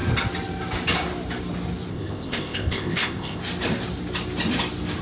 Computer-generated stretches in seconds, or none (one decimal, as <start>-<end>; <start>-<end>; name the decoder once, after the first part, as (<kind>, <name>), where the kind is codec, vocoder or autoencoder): 1.9-3.4 (codec, ZipCodec)